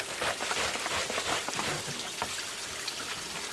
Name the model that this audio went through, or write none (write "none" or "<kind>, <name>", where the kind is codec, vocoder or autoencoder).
none